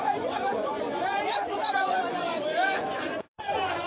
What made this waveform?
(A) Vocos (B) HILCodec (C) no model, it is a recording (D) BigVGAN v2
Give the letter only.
A